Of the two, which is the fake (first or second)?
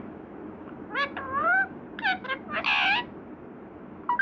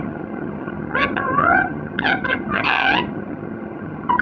second